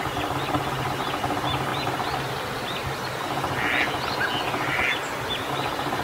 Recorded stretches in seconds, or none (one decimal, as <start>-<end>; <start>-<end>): 0.0-6.0